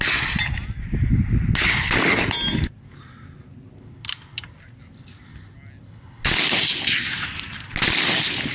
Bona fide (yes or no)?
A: yes